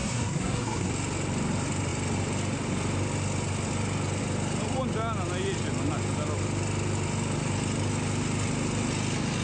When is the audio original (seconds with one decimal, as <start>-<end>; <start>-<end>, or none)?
0.9-9.4